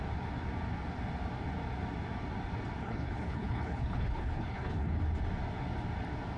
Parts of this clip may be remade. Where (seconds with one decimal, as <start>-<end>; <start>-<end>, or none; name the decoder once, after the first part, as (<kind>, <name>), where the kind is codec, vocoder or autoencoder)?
2.8-5.0 (codec, HILCodec)